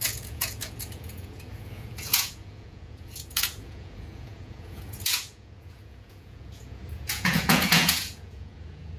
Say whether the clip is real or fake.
fake